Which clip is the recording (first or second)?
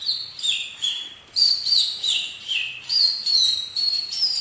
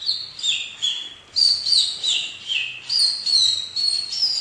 second